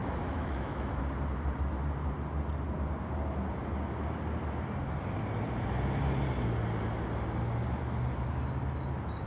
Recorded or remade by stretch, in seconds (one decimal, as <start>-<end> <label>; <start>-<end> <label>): 0.0-1.0 remade; 1.0-9.3 recorded